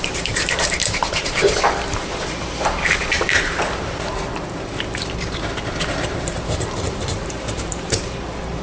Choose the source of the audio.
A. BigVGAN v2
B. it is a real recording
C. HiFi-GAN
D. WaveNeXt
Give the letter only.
A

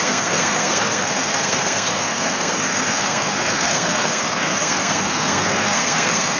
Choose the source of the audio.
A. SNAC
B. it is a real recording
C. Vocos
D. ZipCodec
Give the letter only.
A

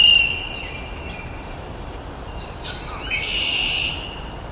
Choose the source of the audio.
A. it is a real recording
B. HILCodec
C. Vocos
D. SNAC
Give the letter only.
A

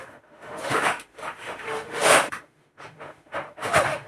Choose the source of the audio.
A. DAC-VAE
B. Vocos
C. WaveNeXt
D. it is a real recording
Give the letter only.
A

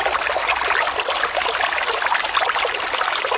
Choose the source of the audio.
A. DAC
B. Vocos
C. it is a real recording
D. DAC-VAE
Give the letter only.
C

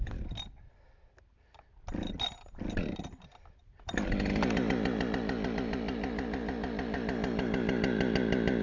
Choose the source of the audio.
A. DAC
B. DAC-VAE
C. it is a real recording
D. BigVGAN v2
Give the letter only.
C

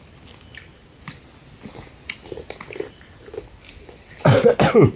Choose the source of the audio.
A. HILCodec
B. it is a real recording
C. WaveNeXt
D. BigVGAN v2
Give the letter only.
B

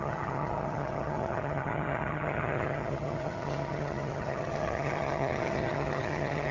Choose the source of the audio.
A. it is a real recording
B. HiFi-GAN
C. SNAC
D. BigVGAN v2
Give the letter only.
B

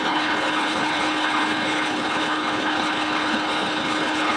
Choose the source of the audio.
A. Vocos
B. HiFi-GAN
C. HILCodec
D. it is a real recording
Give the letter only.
C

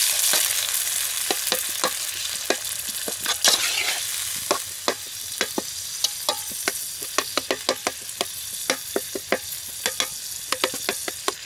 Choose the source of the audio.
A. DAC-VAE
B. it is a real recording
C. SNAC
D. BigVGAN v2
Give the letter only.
B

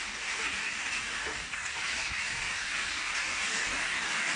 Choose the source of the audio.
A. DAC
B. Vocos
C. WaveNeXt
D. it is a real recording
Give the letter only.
A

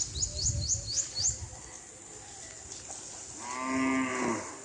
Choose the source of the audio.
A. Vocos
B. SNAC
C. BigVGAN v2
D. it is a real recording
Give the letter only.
D